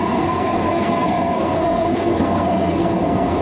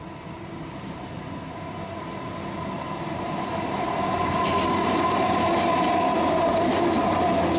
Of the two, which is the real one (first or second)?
second